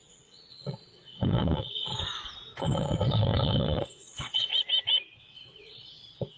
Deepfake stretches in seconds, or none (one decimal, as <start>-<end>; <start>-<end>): 0.0-1.9; 2.6-4.5; 5.2-6.4